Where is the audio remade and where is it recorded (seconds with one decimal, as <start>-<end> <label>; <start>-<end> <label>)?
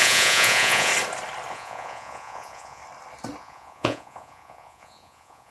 0.0-0.9 remade; 0.9-1.5 recorded; 1.5-2.8 remade; 2.8-3.4 recorded; 3.4-5.5 remade